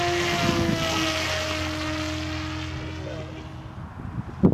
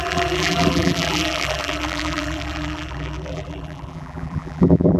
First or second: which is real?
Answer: first